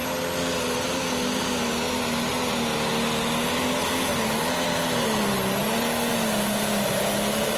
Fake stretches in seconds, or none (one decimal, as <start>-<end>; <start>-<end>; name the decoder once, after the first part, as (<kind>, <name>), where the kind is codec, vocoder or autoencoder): none